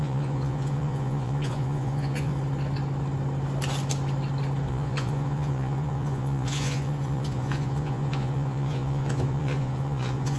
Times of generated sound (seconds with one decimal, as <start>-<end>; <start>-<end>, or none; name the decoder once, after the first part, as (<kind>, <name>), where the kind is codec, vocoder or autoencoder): 0.0-2.3 (vocoder, Vocos); 4.7-10.4